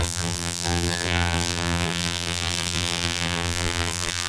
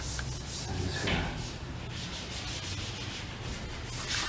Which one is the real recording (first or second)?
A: second